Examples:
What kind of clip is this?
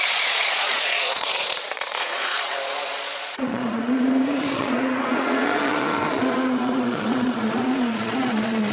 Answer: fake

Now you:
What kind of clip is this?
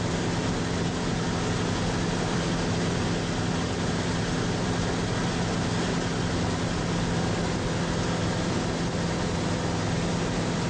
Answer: real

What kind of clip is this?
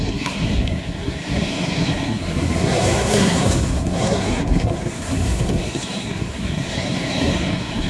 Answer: fake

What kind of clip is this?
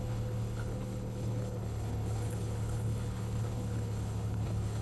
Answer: fake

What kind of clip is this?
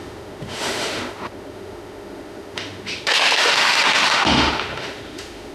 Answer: fake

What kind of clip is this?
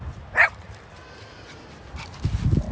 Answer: real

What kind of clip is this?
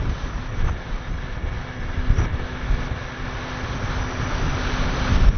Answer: real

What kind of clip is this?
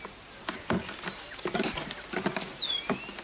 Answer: real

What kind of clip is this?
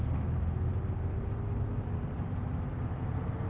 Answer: real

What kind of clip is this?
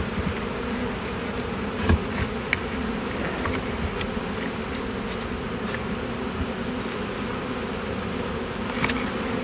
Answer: real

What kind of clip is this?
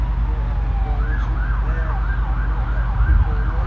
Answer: real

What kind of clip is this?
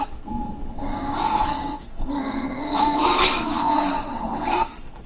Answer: fake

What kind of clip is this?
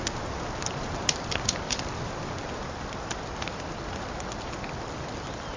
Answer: real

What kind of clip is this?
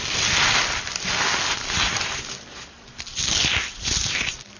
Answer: real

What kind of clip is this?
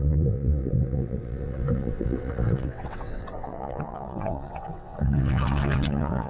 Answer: fake